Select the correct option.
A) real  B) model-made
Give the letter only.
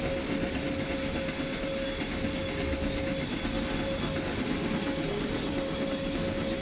A